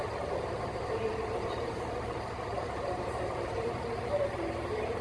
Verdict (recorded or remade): remade